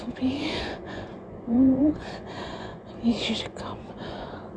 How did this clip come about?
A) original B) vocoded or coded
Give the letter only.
B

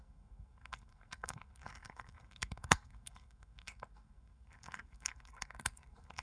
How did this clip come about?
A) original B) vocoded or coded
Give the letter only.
B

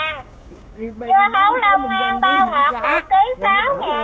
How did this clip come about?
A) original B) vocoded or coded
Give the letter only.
B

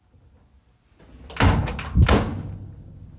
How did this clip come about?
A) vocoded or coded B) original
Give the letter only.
B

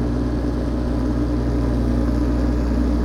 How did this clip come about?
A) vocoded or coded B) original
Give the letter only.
B